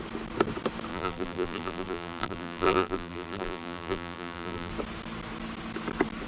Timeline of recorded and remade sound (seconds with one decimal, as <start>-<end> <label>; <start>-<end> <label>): 0.0-0.9 recorded; 0.9-4.7 remade; 4.7-6.3 recorded